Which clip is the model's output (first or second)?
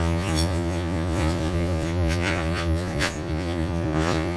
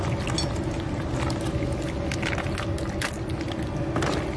first